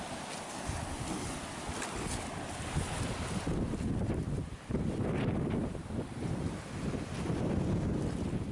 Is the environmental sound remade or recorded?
remade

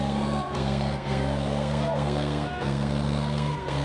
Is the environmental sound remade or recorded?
remade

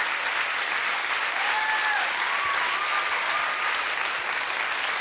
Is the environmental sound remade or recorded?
recorded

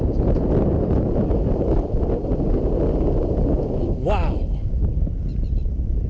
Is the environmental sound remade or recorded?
recorded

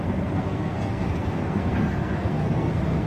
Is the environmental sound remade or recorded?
remade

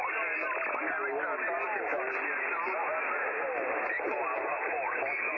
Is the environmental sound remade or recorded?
recorded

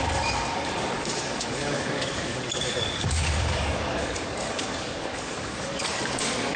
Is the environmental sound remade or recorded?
remade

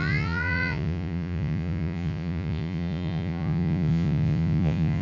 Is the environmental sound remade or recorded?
remade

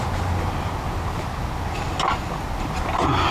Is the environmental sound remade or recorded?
recorded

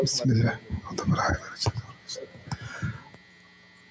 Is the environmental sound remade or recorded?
recorded